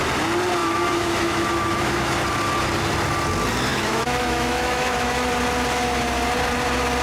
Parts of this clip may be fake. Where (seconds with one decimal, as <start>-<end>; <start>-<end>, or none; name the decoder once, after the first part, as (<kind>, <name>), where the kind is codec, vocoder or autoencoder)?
0.6-2.1 (autoencoder, DAC-VAE); 3.7-5.3